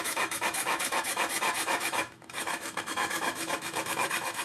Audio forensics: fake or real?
fake